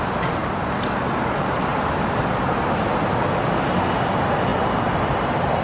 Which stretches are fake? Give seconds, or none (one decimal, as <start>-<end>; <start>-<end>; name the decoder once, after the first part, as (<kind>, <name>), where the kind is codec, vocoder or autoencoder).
0.4-1.1 (vocoder, BigVGAN v2); 1.7-2.2; 4.5-5.1